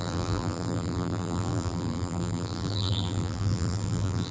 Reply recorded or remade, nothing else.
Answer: remade